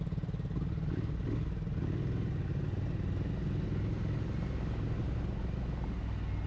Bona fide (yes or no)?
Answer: yes